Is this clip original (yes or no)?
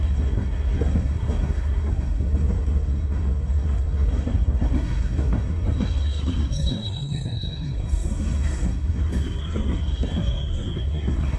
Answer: no